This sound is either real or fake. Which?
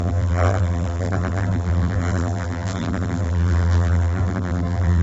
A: fake